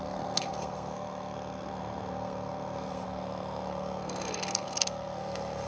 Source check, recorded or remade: remade